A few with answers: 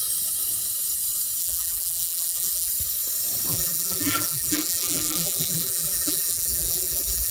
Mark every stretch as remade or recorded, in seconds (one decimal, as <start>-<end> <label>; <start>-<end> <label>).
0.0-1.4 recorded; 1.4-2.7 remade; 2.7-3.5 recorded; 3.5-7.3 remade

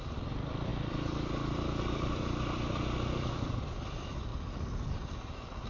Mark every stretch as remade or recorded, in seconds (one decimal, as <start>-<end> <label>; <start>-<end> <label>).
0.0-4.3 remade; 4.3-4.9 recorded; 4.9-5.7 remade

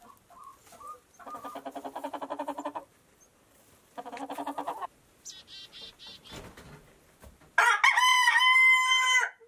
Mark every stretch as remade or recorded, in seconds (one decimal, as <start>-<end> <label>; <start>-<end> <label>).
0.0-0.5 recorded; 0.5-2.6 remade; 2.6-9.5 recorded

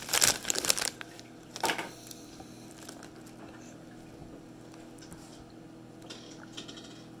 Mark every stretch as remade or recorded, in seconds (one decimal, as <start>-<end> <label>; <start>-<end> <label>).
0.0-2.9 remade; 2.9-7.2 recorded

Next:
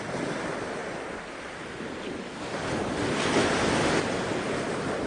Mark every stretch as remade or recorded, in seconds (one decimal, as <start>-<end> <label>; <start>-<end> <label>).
0.0-5.1 recorded